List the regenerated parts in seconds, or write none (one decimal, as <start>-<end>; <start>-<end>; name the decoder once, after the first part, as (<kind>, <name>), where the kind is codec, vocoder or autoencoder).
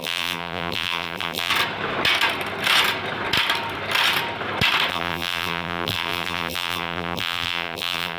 0.0-1.5 (vocoder, BigVGAN v2); 4.9-8.2